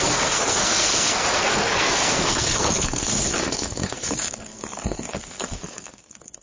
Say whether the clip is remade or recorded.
remade